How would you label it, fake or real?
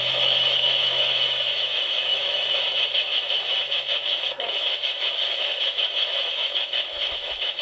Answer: fake